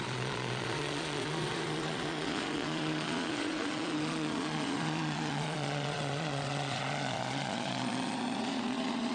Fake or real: fake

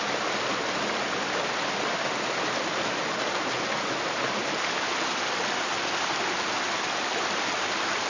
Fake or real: real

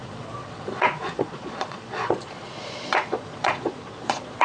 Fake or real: fake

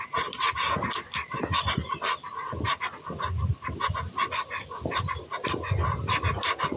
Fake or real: real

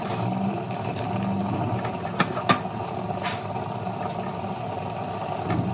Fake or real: real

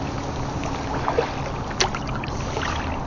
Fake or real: real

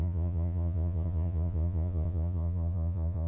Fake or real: fake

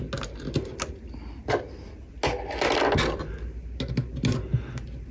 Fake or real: real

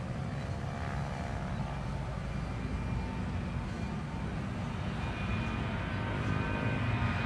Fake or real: real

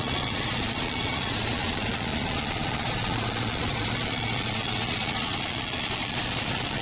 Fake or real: fake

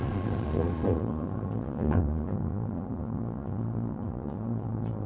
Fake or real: fake